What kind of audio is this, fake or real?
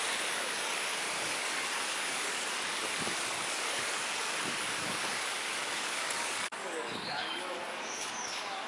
fake